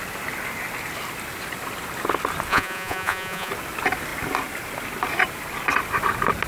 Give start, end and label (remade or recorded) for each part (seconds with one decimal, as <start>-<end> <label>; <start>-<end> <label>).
0.0-2.5 recorded; 2.5-3.5 remade; 3.5-6.5 recorded